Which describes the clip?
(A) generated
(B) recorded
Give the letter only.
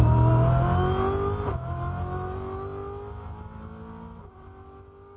B